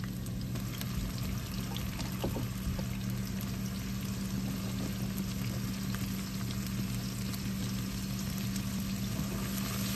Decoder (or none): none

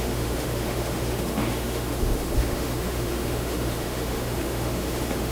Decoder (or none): autoencoder, DAC-VAE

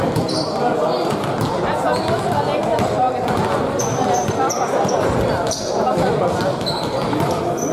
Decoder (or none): none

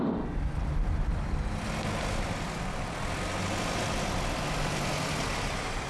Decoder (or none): none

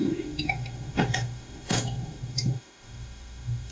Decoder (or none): autoencoder, DAC-VAE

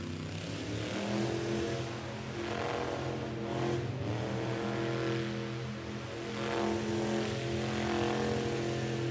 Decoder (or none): none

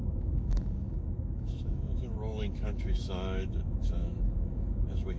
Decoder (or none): autoencoder, DAC-VAE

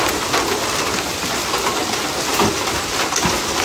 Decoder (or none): none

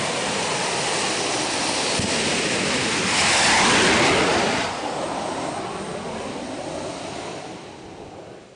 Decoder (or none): none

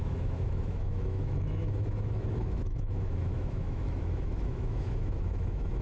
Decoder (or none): autoencoder, DAC-VAE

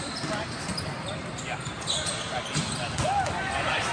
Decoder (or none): none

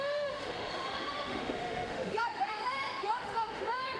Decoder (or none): autoencoder, DAC-VAE